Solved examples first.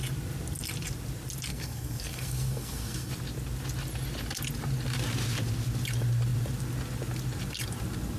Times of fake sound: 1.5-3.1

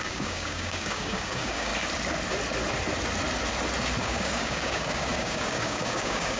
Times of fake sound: 0.0-1.7; 4.0-6.4

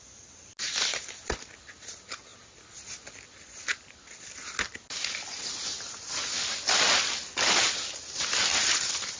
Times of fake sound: none

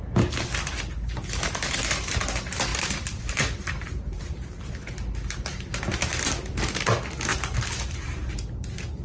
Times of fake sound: 2.7-4.9; 7.3-8.3

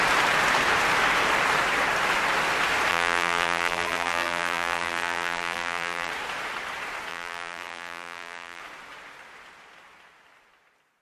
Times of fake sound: 2.9-6.1; 7.1-8.6

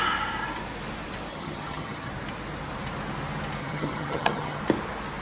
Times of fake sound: 1.3-2.1; 3.6-4.6

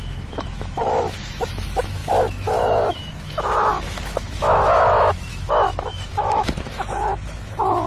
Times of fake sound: 0.0-7.9